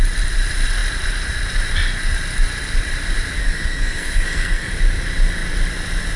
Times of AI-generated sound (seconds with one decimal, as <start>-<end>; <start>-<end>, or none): 3.4-4.7